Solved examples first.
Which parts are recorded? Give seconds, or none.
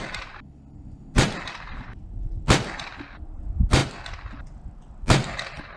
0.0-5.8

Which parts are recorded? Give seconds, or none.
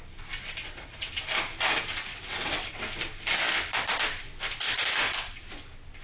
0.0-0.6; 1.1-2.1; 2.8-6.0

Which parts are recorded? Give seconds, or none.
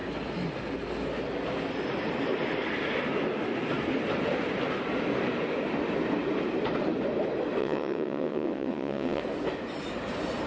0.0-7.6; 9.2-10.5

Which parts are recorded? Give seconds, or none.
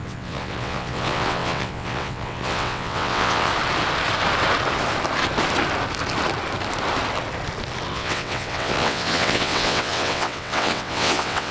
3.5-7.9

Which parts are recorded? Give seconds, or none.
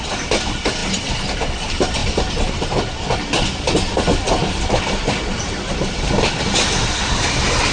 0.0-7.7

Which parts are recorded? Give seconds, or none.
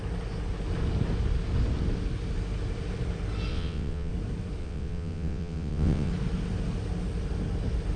0.0-3.5; 4.1-4.6; 6.1-8.0